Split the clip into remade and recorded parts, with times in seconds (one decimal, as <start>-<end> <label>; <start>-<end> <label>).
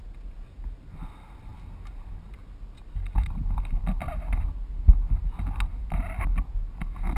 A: 0.0-7.2 recorded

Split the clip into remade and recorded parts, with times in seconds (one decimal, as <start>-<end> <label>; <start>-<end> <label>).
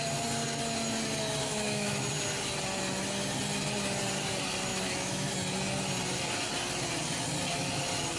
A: 0.0-1.4 recorded; 1.4-2.0 remade; 2.0-4.7 recorded; 4.7-5.3 remade; 5.3-8.2 recorded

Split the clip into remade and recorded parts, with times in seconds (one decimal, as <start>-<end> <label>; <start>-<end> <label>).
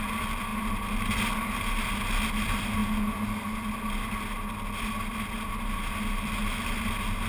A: 0.0-7.3 recorded